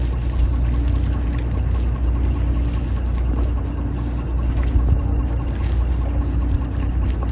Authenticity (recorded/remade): recorded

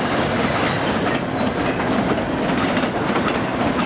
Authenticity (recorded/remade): recorded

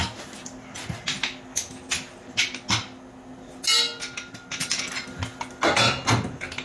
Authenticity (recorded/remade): recorded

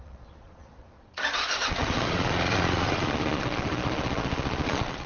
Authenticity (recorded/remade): remade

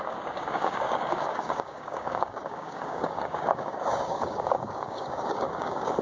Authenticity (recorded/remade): remade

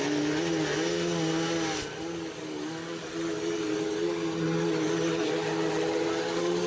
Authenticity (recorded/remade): recorded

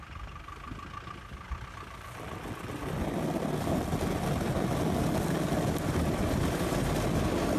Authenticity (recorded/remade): recorded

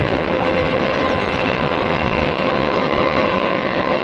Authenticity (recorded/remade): remade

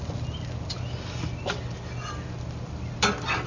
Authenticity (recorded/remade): recorded